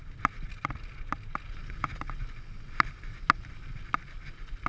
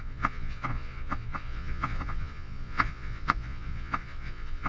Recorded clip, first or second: first